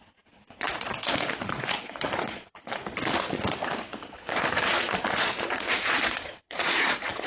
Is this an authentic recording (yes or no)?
no